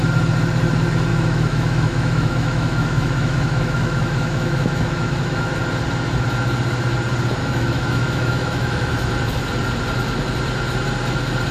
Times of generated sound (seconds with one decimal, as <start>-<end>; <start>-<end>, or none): 1.1-5.6; 7.4-9.1